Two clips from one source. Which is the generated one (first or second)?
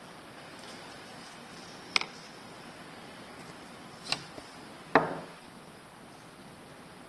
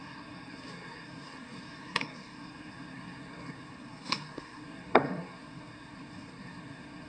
second